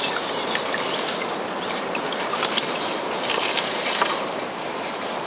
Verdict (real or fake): fake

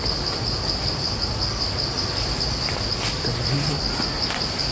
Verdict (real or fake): real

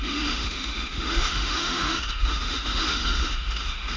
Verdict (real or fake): fake